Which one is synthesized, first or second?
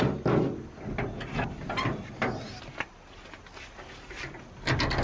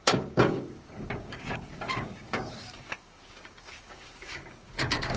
second